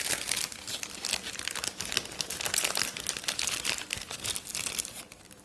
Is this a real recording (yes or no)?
yes